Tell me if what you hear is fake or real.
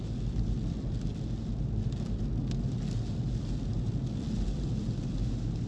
real